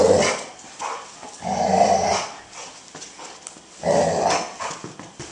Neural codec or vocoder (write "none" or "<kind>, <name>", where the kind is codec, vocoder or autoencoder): none